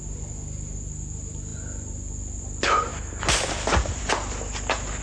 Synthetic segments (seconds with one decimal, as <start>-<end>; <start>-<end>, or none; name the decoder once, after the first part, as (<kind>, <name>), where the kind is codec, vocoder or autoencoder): none